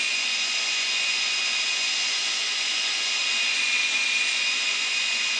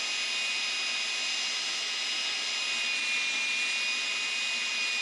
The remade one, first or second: first